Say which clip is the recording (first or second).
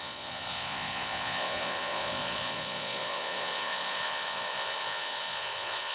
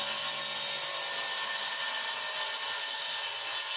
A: second